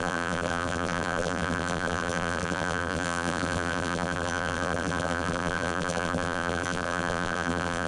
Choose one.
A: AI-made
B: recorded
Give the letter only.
A